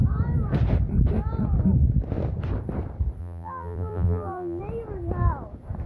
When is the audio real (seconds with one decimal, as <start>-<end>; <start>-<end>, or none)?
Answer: 0.0-3.2; 4.6-5.9